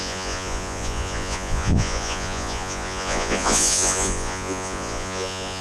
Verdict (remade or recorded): remade